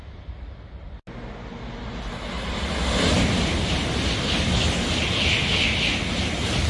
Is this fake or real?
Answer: real